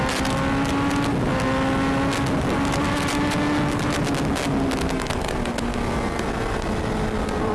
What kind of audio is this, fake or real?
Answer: real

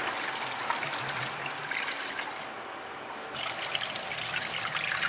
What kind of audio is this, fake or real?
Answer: real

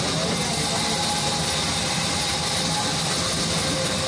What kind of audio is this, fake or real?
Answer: real